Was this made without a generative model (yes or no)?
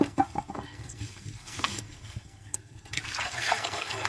no